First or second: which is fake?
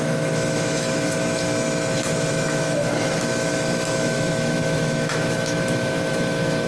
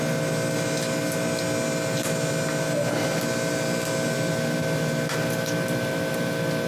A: first